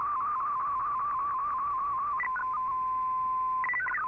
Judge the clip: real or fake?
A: real